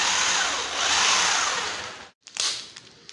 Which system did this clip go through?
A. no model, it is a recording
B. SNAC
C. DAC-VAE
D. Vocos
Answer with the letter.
A